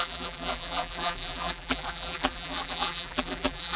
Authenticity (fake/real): fake